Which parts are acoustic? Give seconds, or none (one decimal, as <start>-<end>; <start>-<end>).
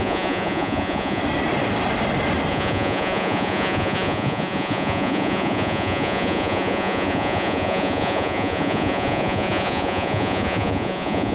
1.2-2.5